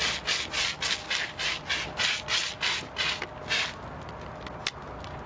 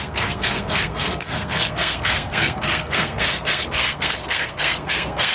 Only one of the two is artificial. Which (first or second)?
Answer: second